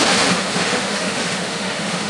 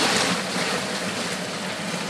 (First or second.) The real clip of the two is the second